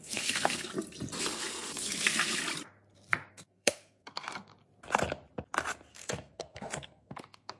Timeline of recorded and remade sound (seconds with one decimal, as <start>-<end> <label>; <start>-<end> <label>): 0.0-0.7 remade; 0.7-1.2 recorded; 1.2-2.4 remade; 2.4-3.3 recorded; 3.3-4.5 remade; 4.5-5.9 recorded; 5.9-7.6 remade